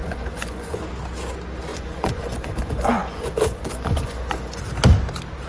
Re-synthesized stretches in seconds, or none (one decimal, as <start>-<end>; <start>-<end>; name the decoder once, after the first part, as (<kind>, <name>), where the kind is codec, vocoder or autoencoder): 0.0-0.8 (vocoder, Vocos); 1.7-4.6